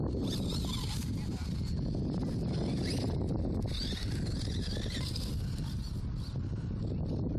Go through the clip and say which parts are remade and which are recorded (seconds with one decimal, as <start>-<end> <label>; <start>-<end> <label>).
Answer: 0.0-7.4 recorded